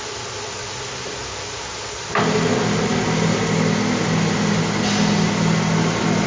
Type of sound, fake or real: real